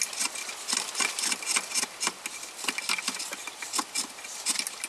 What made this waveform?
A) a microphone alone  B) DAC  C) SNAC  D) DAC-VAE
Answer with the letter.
A